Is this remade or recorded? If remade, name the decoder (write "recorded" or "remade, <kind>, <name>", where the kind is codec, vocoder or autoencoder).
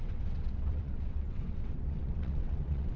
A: remade, vocoder, WaveNeXt